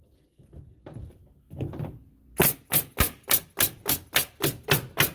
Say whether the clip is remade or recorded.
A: recorded